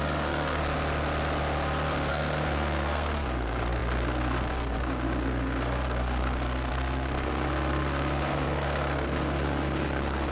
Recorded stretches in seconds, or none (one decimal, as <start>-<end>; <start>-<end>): 0.6-2.1